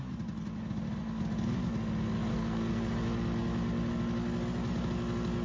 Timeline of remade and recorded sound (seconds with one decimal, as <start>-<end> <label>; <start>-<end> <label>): 0.0-2.3 recorded; 2.3-2.9 remade; 2.9-5.4 recorded